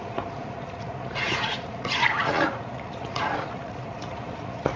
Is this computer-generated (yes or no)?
yes